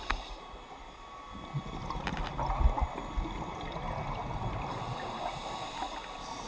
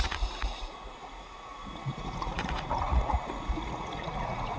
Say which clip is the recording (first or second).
first